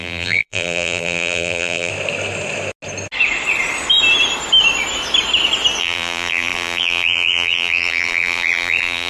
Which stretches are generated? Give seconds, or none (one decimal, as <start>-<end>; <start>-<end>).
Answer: 0.0-1.9; 5.8-9.1